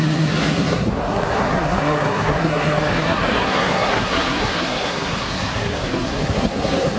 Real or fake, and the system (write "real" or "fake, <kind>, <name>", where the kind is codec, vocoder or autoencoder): fake, codec, SNAC